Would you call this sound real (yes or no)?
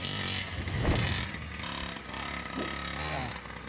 yes